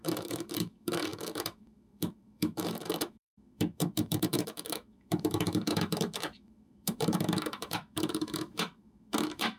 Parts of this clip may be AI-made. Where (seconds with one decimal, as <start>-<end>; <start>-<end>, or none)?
0.0-9.6